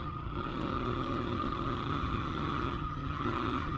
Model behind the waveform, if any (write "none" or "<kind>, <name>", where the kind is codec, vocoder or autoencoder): vocoder, HiFi-GAN